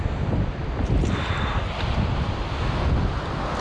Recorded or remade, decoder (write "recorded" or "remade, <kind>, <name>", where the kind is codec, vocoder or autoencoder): recorded